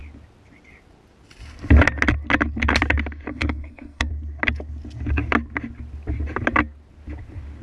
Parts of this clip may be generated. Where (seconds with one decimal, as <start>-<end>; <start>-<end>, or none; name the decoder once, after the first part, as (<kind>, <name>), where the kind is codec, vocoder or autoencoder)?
3.3-4.1 (codec, SNAC)